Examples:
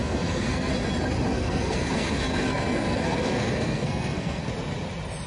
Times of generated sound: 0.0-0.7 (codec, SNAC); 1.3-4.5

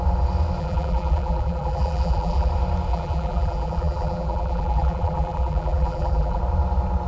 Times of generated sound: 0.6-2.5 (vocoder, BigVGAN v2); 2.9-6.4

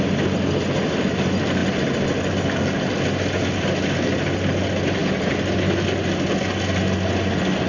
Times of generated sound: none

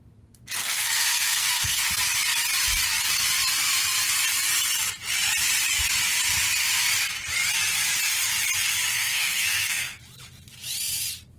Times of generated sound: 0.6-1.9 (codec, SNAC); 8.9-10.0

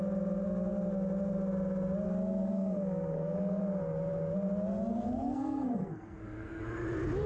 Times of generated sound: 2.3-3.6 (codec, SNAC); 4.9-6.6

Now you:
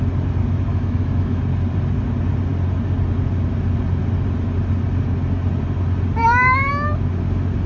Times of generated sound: 0.7-1.4 (autoencoder, DAC-VAE); 6.2-6.7

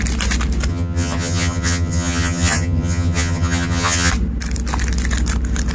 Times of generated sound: 0.7-4.1 (vocoder, HiFi-GAN)